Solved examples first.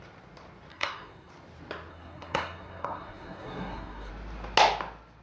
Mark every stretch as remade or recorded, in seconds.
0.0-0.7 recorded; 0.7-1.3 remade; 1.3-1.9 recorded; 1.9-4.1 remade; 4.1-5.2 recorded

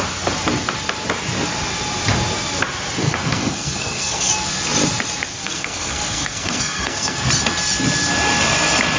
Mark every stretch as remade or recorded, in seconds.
0.0-3.0 recorded; 3.0-4.3 remade; 4.3-5.3 recorded; 5.3-7.3 remade; 7.3-9.0 recorded

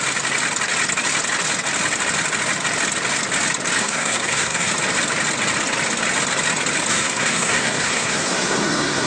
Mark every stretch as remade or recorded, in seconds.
0.0-3.8 recorded; 3.8-4.7 remade; 4.7-6.9 recorded; 6.9-9.1 remade